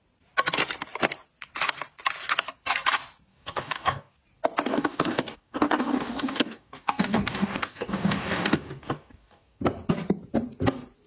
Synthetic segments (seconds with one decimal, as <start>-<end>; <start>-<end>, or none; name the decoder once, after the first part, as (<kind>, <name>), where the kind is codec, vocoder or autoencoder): 3.3-4.2 (codec, DAC); 4.7-9.6